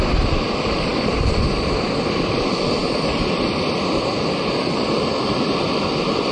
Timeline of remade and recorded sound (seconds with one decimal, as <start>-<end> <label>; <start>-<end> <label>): 0.0-0.9 recorded; 0.9-2.3 remade; 2.3-2.8 recorded; 2.8-5.6 remade; 5.6-6.3 recorded